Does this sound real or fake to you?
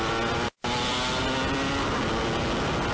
real